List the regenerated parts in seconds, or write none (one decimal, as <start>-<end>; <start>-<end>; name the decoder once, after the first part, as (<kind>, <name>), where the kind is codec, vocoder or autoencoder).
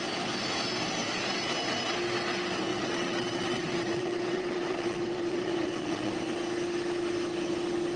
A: 2.7-6.1 (vocoder, WaveNeXt)